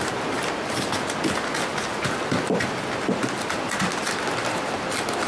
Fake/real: real